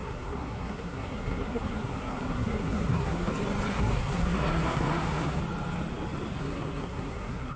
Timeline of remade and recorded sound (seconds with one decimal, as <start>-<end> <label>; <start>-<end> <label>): 0.0-3.3 remade; 3.3-3.7 recorded; 3.7-5.4 remade; 5.4-6.4 recorded; 6.4-7.6 remade